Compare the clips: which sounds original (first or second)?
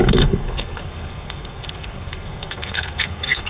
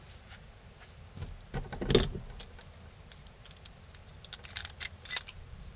second